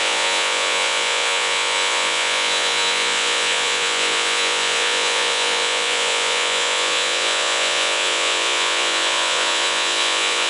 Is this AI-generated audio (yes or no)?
yes